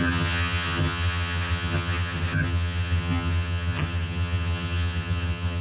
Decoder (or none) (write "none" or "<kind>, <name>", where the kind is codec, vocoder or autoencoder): vocoder, HiFi-GAN